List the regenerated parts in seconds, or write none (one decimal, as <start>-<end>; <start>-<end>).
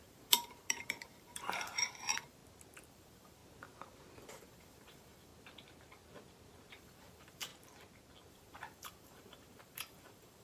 0.0-2.4; 2.9-3.4; 4.3-5.3; 6.7-7.5; 8.3-10.4